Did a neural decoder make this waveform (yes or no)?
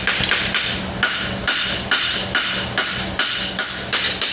no